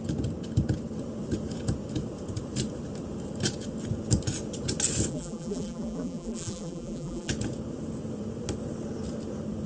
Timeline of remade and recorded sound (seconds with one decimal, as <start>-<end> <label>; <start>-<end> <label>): 0.0-5.1 recorded; 5.1-7.3 remade; 7.3-9.7 recorded